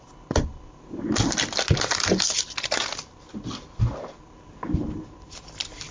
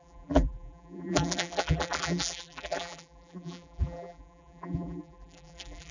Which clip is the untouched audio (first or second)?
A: first